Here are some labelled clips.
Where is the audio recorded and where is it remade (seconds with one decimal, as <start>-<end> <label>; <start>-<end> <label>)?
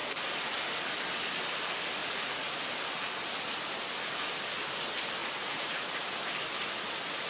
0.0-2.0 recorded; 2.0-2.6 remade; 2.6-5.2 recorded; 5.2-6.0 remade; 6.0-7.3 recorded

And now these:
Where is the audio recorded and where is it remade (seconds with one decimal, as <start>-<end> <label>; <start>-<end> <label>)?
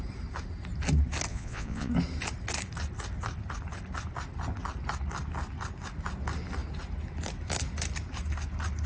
0.0-1.3 recorded; 1.3-1.9 remade; 1.9-8.9 recorded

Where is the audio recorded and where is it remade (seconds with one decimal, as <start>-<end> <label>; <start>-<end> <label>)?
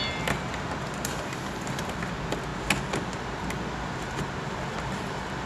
0.0-5.5 recorded